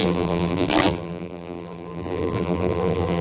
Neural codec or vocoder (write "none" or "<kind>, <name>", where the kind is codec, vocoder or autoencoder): vocoder, BigVGAN v2